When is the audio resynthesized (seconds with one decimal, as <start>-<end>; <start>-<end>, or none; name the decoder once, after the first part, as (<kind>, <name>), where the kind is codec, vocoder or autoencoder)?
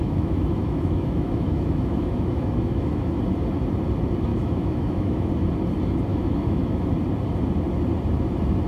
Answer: 0.0-3.2 (autoencoder, DAC-VAE); 4.3-5.3; 6.1-6.9